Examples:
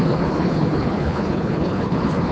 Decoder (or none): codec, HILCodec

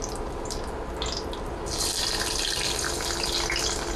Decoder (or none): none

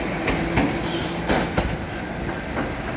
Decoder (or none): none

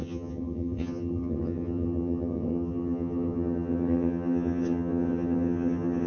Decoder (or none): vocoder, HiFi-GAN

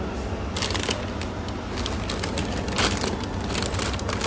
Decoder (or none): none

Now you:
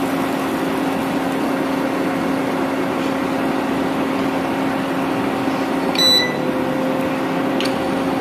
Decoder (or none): none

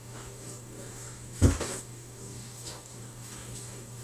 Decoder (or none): codec, DAC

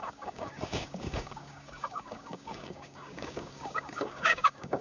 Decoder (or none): codec, DAC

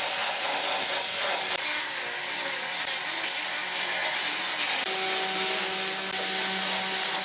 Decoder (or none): none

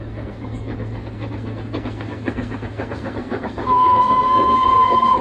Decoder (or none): codec, SNAC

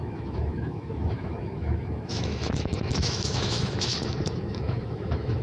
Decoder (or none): autoencoder, DAC-VAE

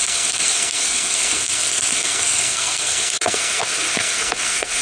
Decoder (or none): codec, SNAC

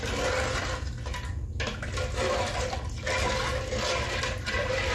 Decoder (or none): none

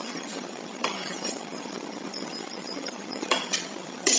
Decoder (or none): vocoder, HiFi-GAN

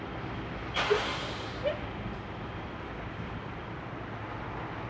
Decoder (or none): none